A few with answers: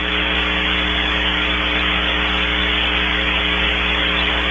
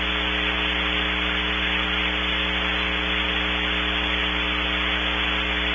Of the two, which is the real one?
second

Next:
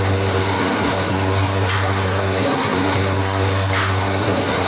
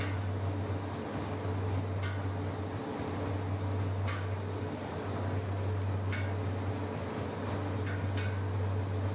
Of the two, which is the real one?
second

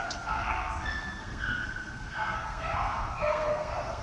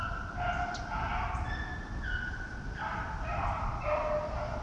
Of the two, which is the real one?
second